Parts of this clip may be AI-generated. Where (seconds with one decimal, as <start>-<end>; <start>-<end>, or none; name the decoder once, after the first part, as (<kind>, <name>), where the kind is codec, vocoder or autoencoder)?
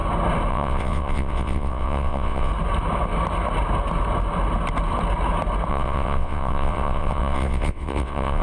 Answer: 0.5-2.5 (vocoder, WaveNeXt); 5.7-8.4